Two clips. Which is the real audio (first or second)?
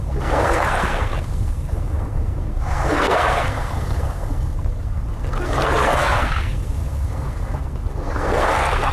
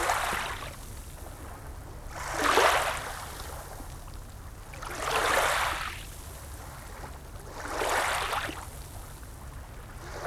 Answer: second